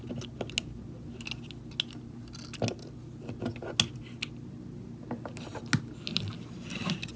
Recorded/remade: recorded